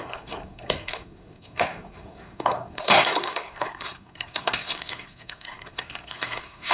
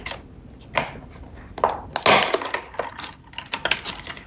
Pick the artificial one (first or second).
first